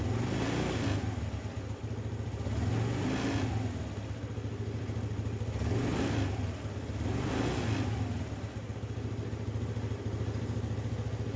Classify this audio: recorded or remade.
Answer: recorded